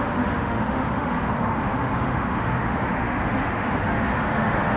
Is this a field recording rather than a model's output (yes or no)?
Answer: no